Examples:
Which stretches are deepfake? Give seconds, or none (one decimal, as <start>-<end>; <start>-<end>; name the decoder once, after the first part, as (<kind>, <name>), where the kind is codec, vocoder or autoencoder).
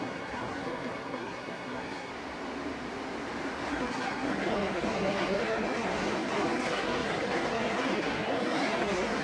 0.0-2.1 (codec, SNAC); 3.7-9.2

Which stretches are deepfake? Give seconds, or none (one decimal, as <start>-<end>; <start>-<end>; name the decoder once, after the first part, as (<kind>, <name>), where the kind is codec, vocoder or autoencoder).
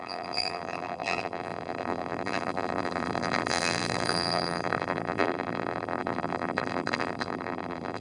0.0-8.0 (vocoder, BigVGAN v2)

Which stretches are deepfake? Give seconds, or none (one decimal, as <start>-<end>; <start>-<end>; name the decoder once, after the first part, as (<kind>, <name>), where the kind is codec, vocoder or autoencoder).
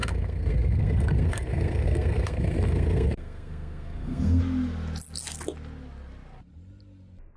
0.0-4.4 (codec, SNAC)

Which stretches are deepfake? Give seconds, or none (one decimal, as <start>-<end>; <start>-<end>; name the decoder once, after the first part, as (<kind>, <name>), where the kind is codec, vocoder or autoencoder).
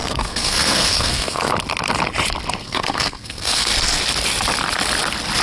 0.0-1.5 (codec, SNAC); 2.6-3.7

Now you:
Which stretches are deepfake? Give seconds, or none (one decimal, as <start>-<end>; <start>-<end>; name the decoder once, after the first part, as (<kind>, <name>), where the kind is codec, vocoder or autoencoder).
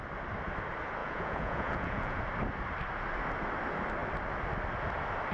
1.0-2.2 (vocoder, Vocos)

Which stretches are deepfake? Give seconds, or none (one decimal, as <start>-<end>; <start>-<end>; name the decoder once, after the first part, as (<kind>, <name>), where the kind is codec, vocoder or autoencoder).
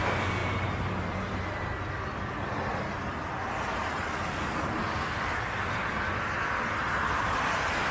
none